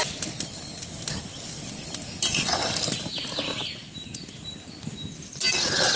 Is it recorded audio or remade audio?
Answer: recorded